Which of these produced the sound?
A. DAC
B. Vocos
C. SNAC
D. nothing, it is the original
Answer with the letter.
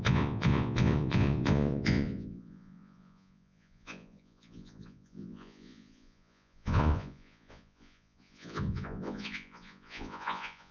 B